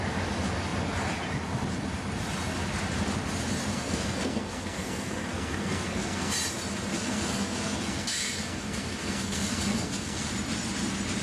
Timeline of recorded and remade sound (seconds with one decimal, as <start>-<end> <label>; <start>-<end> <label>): 0.0-3.7 recorded; 3.7-6.3 remade; 6.3-6.9 recorded; 6.9-10.3 remade; 10.3-11.2 recorded